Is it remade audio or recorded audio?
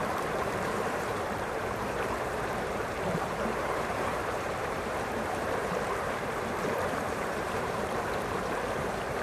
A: remade